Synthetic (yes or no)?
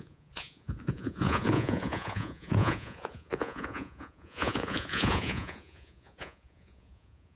yes